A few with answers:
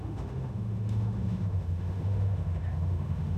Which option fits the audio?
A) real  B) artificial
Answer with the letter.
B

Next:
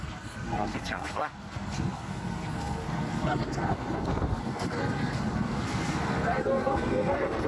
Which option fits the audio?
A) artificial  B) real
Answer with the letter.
A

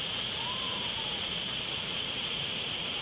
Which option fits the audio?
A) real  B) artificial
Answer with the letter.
B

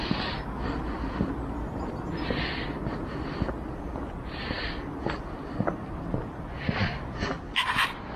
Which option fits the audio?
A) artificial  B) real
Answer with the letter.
B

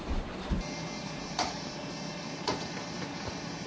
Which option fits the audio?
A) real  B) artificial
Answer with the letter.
B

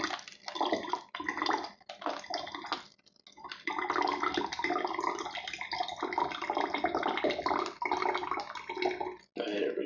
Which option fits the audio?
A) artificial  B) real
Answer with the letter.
B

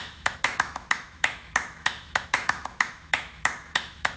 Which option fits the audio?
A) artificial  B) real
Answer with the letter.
A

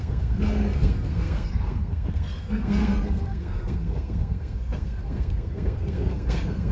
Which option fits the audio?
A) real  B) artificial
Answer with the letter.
B